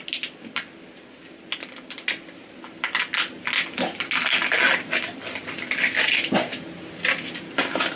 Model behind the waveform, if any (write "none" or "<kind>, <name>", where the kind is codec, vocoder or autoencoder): none